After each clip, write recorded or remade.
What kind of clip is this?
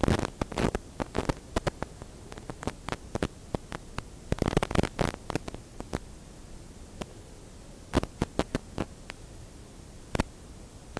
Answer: recorded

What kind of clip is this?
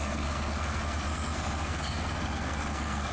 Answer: remade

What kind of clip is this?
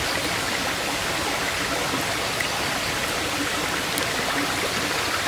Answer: recorded